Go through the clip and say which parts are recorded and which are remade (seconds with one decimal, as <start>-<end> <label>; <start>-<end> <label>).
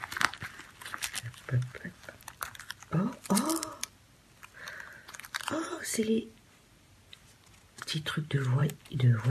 0.0-9.3 recorded